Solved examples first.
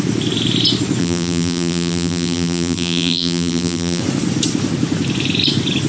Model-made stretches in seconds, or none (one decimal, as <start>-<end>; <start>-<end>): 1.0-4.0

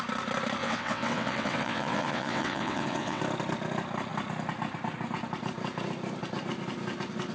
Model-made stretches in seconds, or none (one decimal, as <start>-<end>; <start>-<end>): 0.6-3.2

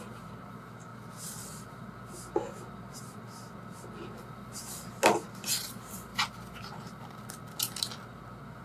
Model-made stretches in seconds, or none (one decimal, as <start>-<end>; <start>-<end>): none

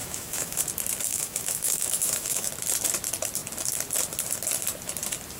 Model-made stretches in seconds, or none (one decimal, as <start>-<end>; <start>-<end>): 0.0-0.6; 1.1-2.5

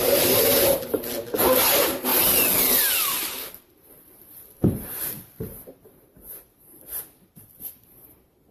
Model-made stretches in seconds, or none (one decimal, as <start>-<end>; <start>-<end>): none

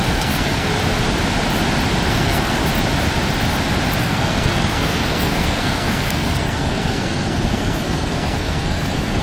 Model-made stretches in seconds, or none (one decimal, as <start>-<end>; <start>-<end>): 0.0-0.7; 2.1-2.6; 4.0-9.2

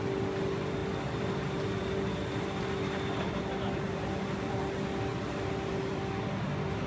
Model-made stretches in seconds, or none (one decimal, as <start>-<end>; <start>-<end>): none

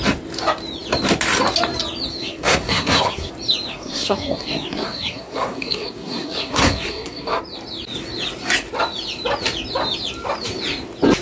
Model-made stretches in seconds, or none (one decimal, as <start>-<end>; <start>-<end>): 2.2-3.3; 3.7-7.4